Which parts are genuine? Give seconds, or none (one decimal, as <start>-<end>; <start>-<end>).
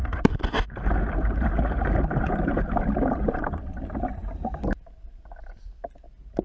3.8-6.4